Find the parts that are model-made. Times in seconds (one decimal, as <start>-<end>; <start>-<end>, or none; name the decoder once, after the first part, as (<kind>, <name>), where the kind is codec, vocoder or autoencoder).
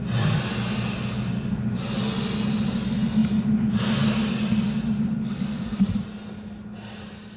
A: none